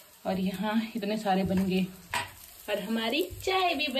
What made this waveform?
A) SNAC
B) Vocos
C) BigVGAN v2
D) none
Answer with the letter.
D